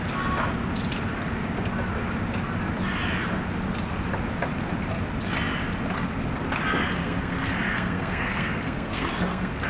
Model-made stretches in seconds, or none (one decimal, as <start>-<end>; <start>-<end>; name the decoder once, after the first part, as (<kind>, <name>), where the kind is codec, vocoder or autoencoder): 7.0-9.7 (codec, SNAC)